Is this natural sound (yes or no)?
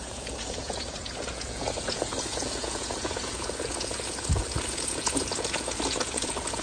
no